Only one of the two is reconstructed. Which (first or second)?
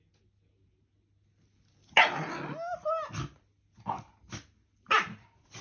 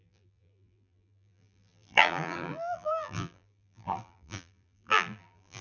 second